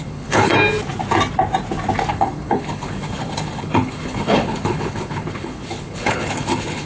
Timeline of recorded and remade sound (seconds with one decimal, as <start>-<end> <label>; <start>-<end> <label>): 0.0-0.5 remade; 0.5-2.1 recorded; 2.1-6.8 remade